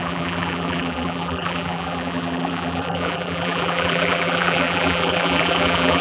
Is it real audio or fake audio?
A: fake